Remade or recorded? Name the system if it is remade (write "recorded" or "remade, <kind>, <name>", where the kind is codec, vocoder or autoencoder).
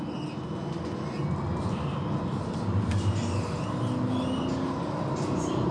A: recorded